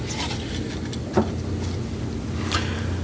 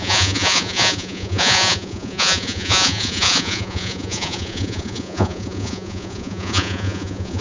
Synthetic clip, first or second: second